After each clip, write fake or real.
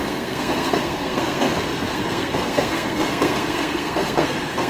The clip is fake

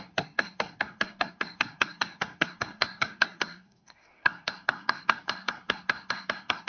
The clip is fake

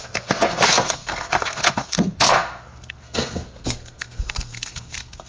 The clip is fake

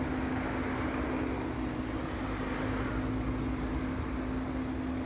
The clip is real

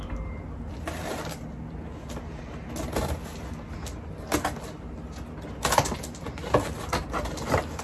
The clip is real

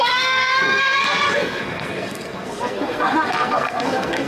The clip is fake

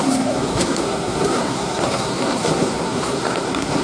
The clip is fake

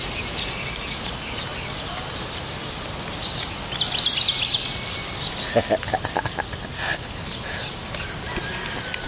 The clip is real